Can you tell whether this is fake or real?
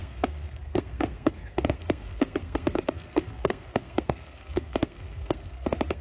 fake